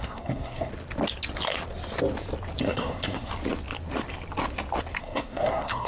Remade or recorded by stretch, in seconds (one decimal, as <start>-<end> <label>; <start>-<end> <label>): 0.0-0.7 remade; 0.7-2.6 recorded; 2.6-3.3 remade; 3.3-5.0 recorded; 5.0-5.9 remade